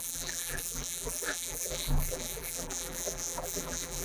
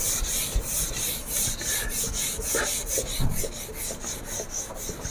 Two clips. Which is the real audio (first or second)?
second